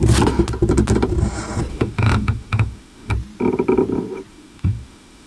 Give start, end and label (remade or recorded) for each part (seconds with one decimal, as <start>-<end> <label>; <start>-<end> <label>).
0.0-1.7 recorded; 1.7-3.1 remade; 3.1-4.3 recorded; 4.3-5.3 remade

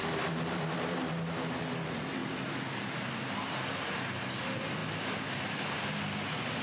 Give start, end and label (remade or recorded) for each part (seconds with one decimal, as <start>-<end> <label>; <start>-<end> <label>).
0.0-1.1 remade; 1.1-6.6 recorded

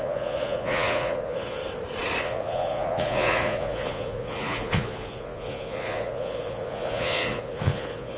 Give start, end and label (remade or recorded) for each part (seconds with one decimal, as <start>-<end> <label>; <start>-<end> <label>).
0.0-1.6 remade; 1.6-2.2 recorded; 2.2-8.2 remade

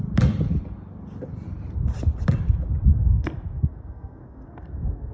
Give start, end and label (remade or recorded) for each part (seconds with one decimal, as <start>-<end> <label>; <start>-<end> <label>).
0.0-2.9 recorded; 2.9-5.1 remade

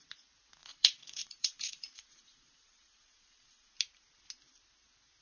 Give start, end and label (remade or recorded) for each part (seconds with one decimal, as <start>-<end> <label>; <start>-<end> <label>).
0.0-0.6 recorded; 0.6-3.7 remade; 3.7-5.2 recorded

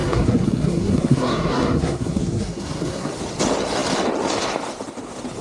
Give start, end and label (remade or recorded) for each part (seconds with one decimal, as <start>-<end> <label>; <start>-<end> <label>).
0.0-3.1 remade; 3.1-5.4 recorded

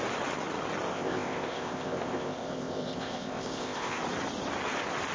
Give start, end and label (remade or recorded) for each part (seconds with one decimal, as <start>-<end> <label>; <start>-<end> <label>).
0.0-0.9 recorded; 0.9-4.0 remade; 4.0-5.1 recorded